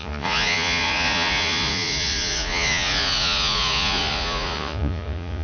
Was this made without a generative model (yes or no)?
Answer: no